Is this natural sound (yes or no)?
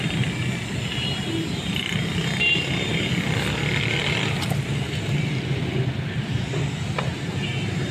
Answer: yes